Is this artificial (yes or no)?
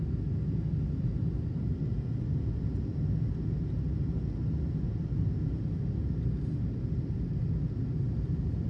no